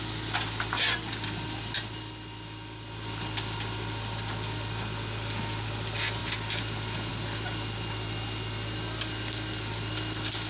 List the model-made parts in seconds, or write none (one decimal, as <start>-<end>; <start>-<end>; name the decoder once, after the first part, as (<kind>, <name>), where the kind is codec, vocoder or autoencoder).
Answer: none